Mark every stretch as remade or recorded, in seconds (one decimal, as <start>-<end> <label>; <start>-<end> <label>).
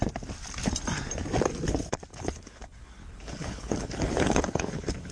0.0-2.1 recorded; 2.1-5.1 remade